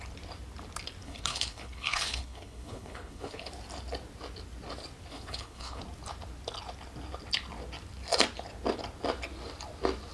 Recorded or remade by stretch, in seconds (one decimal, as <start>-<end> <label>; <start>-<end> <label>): 0.0-1.0 recorded; 1.0-3.5 remade; 3.5-5.1 recorded; 5.1-5.8 remade; 5.8-10.1 recorded